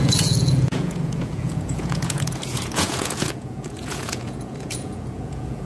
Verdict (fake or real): fake